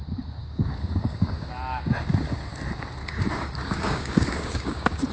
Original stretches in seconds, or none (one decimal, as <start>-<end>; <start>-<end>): 0.0-0.4; 1.5-3.0